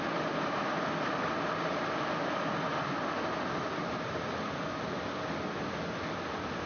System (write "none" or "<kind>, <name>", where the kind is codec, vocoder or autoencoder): none